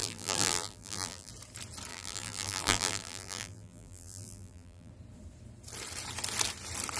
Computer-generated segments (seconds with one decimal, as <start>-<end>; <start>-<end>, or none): 0.0-1.3; 1.9-4.9